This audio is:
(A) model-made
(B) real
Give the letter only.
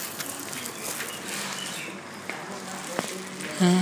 B